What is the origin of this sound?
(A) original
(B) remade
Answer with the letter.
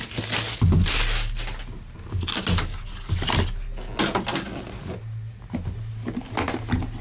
A